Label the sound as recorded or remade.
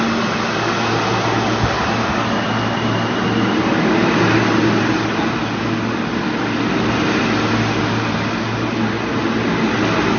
recorded